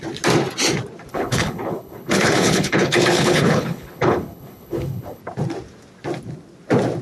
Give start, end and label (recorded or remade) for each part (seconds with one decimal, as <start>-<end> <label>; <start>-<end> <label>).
0.0-1.1 recorded; 1.1-5.2 remade; 5.2-7.0 recorded